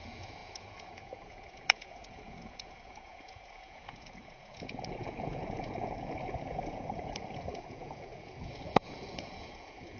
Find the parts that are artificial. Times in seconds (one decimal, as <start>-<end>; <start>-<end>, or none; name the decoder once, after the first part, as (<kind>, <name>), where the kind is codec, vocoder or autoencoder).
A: 0.0-10.0 (vocoder, Vocos)